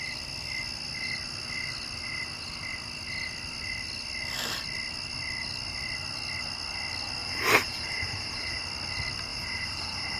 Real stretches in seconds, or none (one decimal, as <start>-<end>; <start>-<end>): 0.0-7.2; 8.6-9.3